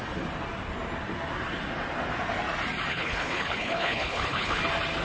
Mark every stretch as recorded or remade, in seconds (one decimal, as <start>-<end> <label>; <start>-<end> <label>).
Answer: 0.0-2.9 recorded; 2.9-4.6 remade; 4.6-5.0 recorded